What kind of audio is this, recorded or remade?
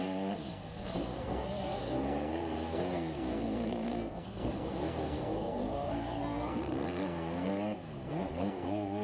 remade